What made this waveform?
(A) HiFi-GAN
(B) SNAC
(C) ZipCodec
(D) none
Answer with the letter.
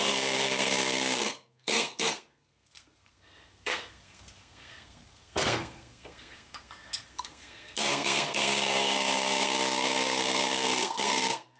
B